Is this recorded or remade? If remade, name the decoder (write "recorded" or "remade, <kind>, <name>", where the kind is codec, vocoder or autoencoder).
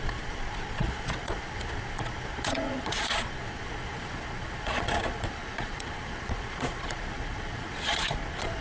remade, vocoder, Vocos